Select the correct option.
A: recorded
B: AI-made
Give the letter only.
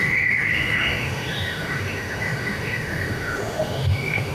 B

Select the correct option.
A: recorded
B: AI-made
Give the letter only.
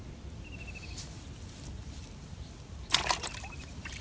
A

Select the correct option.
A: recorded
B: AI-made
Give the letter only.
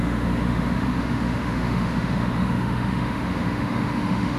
B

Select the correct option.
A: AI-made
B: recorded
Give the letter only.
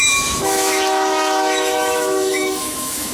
A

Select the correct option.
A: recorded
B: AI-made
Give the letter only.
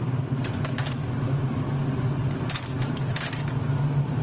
A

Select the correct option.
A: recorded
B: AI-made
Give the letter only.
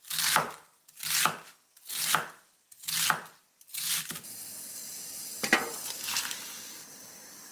A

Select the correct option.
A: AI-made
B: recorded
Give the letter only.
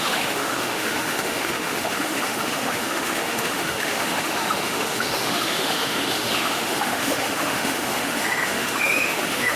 A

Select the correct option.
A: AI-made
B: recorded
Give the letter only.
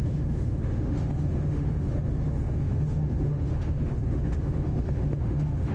A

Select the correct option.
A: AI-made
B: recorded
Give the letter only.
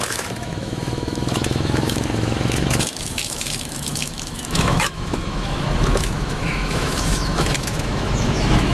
A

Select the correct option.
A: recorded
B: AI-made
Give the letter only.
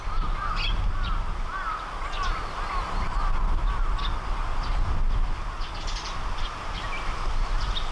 A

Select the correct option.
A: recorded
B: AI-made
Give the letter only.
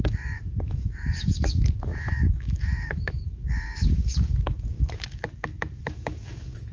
B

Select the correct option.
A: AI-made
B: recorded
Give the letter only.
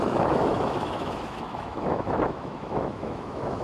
A